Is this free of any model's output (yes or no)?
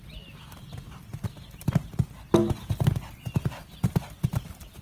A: yes